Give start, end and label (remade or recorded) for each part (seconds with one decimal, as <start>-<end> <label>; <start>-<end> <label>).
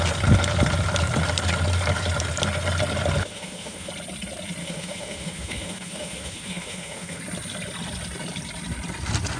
0.0-3.2 recorded; 3.2-3.9 remade; 3.9-4.6 recorded; 4.6-7.2 remade; 7.2-9.4 recorded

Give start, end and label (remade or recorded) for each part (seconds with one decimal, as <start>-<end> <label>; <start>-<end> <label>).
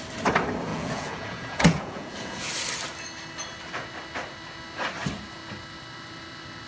0.0-0.7 recorded; 0.7-2.5 remade; 2.5-6.7 recorded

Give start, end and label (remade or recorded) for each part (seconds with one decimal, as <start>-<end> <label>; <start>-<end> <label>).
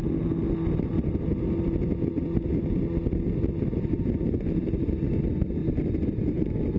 0.0-3.9 recorded; 3.9-5.6 remade; 5.6-6.3 recorded; 6.3-6.8 remade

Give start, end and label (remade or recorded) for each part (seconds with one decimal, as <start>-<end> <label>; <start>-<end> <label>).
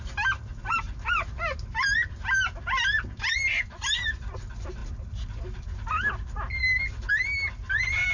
0.0-8.1 recorded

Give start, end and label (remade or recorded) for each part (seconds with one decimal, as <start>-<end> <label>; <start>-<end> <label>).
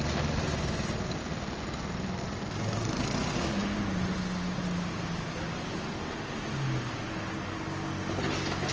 0.0-8.7 recorded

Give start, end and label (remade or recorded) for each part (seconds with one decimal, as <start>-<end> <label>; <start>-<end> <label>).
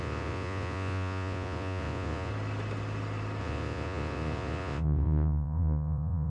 0.0-2.3 remade; 2.3-3.4 recorded; 3.4-6.3 remade